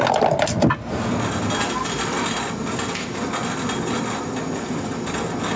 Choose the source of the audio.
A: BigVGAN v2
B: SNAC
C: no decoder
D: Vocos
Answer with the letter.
C